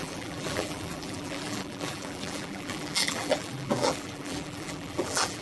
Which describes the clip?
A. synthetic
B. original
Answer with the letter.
A